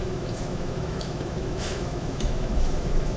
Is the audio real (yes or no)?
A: no